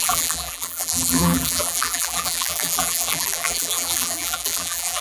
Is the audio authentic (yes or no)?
no